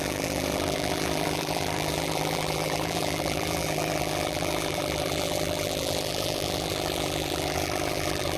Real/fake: fake